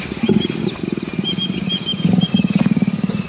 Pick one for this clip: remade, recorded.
recorded